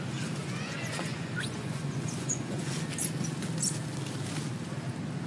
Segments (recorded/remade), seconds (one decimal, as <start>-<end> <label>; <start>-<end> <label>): 0.0-0.4 recorded; 0.4-2.9 remade; 2.9-5.3 recorded